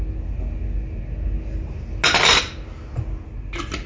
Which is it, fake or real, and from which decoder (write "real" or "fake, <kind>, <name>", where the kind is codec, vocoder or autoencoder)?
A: real